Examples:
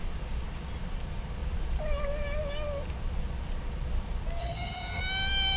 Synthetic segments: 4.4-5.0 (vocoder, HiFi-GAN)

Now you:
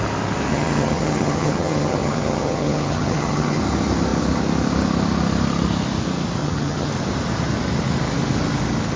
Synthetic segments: 0.5-3.6 (vocoder, HiFi-GAN); 6.4-6.9

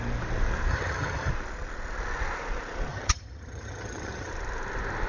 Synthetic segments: 0.7-1.3 (vocoder, HiFi-GAN); 2.9-4.3

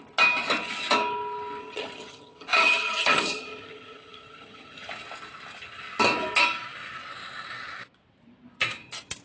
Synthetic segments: 1.6-4.9 (vocoder, HiFi-GAN)

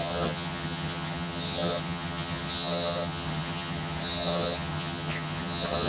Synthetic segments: 0.0-5.9 (vocoder, HiFi-GAN)